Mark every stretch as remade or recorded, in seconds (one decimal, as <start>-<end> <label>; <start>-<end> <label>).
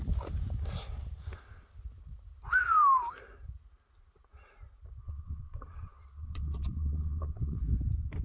0.0-5.0 recorded; 5.0-7.6 remade; 7.6-8.2 recorded